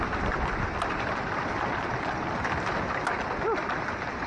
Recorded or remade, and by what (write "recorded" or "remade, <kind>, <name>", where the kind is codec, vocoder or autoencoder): recorded